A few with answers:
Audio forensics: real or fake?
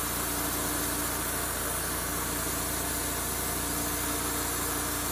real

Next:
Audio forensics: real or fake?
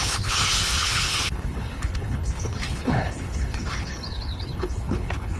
fake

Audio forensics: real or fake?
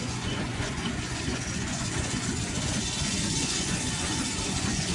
fake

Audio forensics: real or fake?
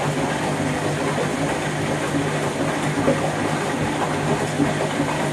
real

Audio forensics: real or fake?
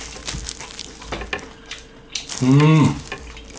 real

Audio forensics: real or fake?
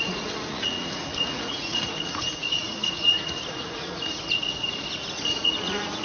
fake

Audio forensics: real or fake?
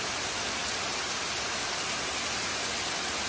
real